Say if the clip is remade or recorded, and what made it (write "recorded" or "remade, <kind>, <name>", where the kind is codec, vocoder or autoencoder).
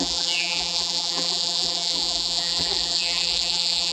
remade, vocoder, BigVGAN v2